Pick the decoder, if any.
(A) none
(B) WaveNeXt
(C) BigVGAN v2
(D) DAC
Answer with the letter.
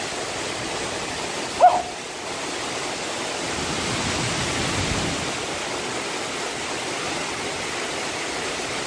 A